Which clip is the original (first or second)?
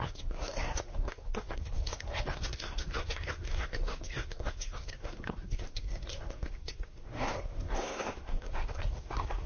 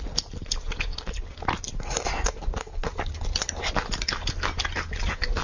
second